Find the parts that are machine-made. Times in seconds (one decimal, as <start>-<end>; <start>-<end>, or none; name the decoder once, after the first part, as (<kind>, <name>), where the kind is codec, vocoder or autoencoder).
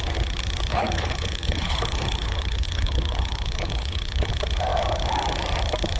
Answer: 0.7-4.3 (codec, HILCodec)